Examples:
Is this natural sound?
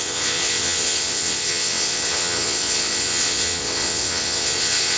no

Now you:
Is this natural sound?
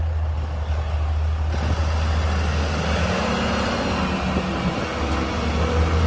yes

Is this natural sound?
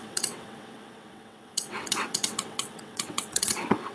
no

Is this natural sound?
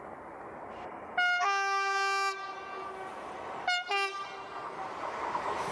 yes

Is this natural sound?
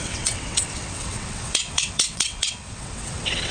no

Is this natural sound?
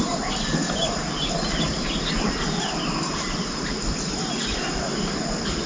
yes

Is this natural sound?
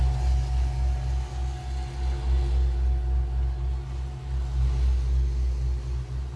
yes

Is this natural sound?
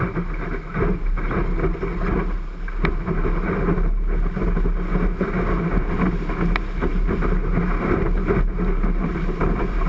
yes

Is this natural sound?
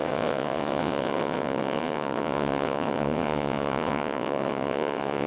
no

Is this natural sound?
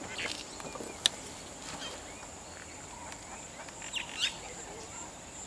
yes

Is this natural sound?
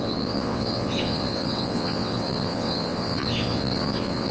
no